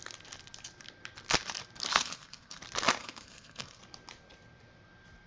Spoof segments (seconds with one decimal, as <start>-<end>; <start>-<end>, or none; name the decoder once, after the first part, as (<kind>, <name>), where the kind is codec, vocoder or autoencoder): 1.9-2.6 (codec, SNAC); 3.0-3.8